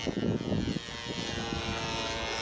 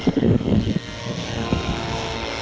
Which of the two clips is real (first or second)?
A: first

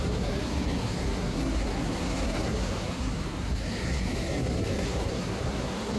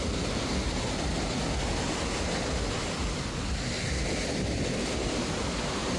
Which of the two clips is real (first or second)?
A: second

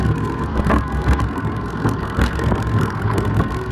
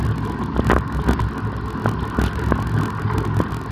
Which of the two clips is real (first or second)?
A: second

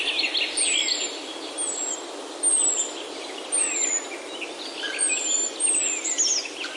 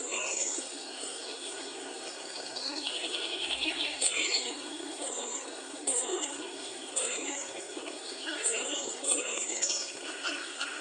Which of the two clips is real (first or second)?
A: first